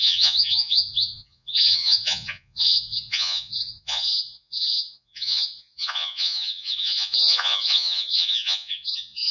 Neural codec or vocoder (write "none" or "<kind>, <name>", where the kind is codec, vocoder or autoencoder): vocoder, Vocos